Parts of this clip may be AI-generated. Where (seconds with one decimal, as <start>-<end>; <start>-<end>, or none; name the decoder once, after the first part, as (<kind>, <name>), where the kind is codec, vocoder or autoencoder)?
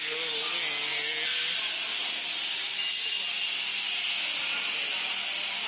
none